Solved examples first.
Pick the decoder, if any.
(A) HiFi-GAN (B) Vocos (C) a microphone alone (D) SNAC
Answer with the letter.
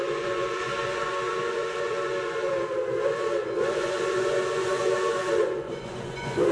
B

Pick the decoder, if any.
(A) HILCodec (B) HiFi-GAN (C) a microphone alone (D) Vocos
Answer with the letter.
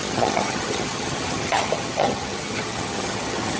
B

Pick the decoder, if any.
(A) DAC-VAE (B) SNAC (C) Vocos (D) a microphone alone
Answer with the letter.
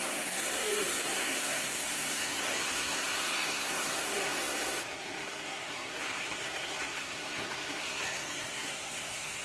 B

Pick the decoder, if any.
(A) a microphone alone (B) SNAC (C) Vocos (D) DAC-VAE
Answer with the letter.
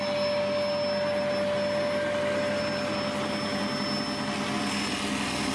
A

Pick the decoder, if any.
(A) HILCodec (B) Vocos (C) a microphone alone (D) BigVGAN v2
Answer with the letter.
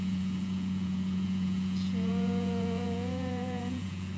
B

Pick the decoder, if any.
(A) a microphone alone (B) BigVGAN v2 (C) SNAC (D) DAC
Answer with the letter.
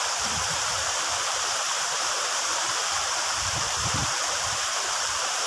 B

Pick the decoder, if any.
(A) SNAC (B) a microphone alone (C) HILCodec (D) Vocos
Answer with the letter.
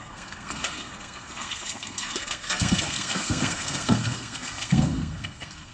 A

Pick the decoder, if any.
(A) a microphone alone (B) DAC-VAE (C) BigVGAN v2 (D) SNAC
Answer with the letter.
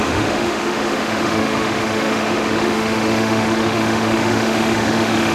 B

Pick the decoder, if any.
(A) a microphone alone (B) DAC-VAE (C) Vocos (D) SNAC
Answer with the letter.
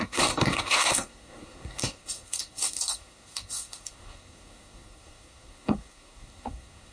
D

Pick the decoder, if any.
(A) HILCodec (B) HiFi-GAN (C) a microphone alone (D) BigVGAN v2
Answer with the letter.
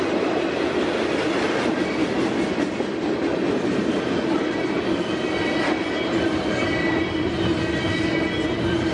C